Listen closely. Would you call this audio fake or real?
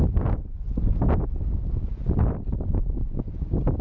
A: real